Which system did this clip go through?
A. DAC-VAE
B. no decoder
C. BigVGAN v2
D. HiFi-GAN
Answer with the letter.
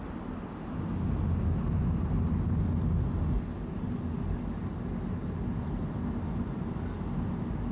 B